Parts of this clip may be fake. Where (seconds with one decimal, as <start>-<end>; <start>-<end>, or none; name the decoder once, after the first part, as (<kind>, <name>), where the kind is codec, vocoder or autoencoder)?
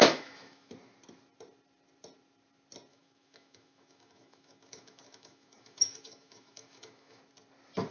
0.0-0.7 (autoencoder, DAC-VAE); 2.9-7.2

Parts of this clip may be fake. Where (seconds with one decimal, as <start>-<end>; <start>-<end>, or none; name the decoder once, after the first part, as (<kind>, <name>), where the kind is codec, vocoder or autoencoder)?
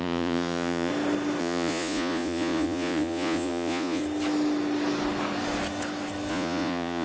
0.0-0.9 (vocoder, Vocos); 1.4-4.0; 6.3-7.0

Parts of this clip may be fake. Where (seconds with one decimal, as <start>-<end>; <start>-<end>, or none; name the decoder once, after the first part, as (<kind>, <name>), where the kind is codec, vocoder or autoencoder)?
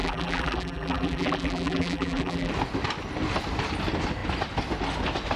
0.0-2.5 (vocoder, BigVGAN v2)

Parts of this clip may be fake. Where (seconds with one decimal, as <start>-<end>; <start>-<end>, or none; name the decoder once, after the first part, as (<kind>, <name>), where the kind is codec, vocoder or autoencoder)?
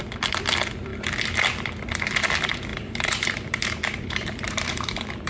2.7-5.3 (vocoder, BigVGAN v2)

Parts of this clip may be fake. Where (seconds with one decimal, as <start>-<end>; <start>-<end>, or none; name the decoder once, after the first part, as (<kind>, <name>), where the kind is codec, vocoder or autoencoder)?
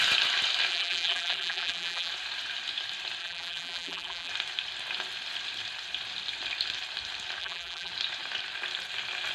0.7-2.1 (vocoder, BigVGAN v2); 3.2-4.3; 7.4-7.9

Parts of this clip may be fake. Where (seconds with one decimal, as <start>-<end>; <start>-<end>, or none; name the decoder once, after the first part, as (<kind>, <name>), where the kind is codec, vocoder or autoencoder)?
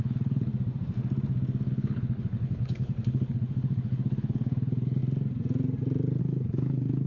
0.0-0.5 (codec, HILCodec); 1.7-5.0; 6.2-7.1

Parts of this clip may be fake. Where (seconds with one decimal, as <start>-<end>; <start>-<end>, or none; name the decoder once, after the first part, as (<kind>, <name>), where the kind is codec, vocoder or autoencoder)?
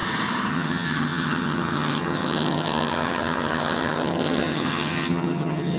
0.5-5.8 (vocoder, HiFi-GAN)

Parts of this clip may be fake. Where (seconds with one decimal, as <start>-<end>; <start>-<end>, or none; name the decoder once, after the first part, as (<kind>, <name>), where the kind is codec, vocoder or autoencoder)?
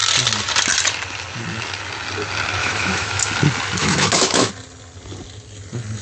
2.6-3.2 (autoencoder, DAC-VAE); 3.8-4.5